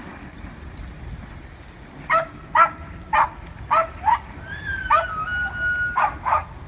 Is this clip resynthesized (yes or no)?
no